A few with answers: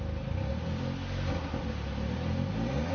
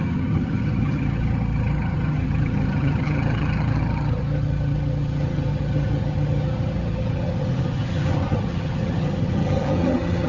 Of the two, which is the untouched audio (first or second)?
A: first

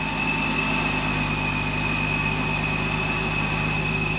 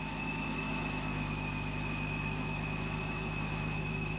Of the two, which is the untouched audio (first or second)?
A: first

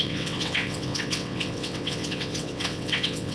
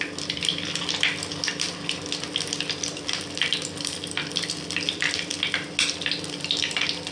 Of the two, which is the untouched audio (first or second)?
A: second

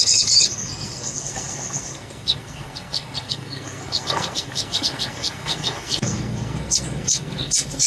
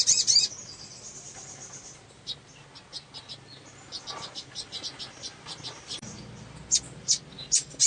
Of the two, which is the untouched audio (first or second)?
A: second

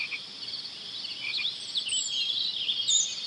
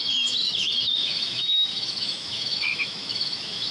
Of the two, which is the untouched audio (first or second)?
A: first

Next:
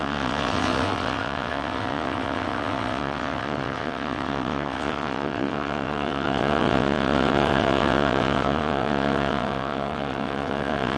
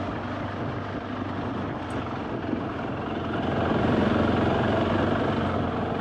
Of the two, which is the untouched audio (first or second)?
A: second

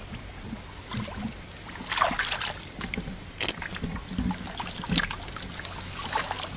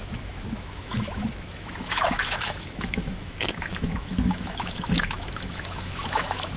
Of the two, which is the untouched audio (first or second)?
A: first